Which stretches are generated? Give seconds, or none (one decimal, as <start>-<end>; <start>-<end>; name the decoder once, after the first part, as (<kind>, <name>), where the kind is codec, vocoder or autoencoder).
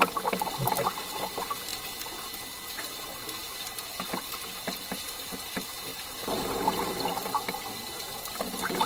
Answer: none